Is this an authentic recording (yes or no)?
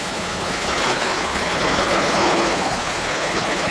no